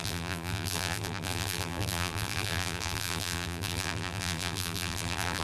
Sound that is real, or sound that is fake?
fake